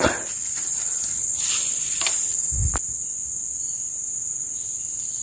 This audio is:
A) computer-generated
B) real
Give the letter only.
B